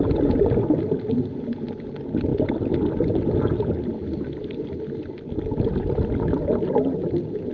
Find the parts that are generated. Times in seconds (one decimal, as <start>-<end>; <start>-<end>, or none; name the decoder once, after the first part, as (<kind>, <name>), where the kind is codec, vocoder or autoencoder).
none